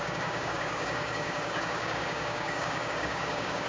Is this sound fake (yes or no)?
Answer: yes